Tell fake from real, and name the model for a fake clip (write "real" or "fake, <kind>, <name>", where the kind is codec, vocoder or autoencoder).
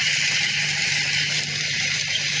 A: real